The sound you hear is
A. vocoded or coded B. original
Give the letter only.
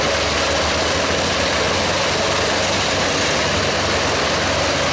B